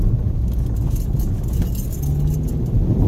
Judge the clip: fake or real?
real